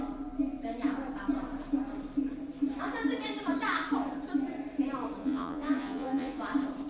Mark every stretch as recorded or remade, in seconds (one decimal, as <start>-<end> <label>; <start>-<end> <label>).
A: 0.0-5.2 recorded; 5.2-6.4 remade; 6.4-6.9 recorded